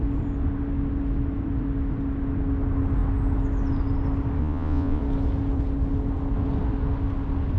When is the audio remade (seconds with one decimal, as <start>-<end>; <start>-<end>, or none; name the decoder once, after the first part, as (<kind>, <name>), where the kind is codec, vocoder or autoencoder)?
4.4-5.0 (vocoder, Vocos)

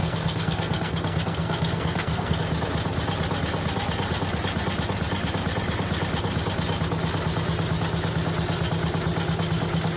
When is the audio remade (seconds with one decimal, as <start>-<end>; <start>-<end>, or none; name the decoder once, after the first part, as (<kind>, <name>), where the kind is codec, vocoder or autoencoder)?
0.0-2.4 (codec, SNAC)

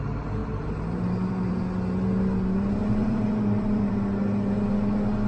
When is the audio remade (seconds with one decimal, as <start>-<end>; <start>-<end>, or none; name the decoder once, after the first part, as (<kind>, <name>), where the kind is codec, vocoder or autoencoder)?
0.4-1.5 (vocoder, BigVGAN v2); 2.8-3.9

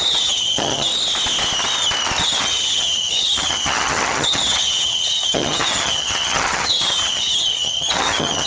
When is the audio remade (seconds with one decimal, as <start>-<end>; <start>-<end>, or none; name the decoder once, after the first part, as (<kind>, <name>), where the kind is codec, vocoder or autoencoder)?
0.0-0.9 (vocoder, HiFi-GAN); 2.2-8.5

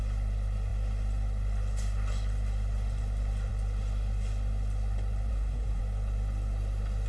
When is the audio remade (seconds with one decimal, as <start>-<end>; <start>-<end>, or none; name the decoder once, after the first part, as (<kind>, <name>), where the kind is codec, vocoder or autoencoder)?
5.3-5.8 (codec, SNAC)

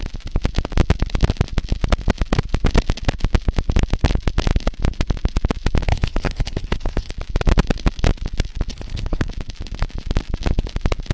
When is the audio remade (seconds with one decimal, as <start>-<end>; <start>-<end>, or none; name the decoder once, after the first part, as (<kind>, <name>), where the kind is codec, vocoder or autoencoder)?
5.9-7.1 (codec, HILCodec); 8.7-9.3

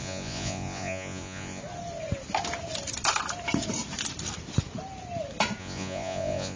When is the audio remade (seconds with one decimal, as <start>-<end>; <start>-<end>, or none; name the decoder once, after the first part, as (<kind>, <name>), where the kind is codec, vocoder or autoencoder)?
0.0-1.6 (vocoder, Vocos); 5.6-6.6

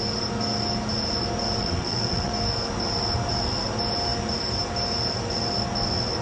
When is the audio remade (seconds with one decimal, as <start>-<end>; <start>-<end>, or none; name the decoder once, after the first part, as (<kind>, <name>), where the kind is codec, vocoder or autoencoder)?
1.6-2.3 (vocoder, WaveNeXt)